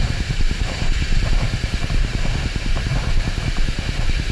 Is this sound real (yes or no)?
no